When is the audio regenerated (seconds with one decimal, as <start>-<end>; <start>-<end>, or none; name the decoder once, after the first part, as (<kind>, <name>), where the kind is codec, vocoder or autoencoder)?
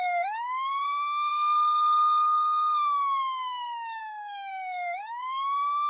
0.0-5.9 (codec, SNAC)